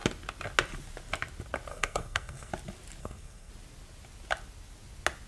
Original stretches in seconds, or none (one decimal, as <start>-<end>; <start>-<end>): 0.0-1.7; 2.5-3.0; 3.5-5.3